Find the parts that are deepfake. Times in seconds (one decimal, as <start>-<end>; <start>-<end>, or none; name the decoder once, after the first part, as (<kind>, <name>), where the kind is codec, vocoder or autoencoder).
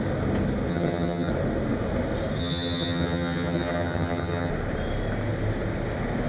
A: 0.7-1.3 (vocoder, HiFi-GAN); 2.4-4.5